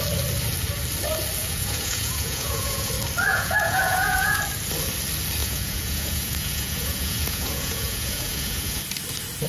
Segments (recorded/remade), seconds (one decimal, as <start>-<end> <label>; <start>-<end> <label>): 0.0-1.4 recorded; 1.4-2.9 remade; 2.9-3.3 recorded; 3.3-4.4 remade; 4.4-5.4 recorded; 5.4-8.8 remade; 8.8-9.5 recorded